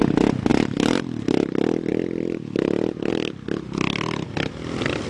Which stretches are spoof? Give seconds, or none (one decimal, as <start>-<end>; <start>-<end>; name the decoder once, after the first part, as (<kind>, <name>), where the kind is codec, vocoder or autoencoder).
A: 0.5-1.3 (vocoder, BigVGAN v2); 1.9-3.1